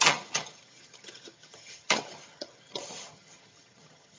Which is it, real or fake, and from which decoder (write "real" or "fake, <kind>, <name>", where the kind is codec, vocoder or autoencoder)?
fake, vocoder, HiFi-GAN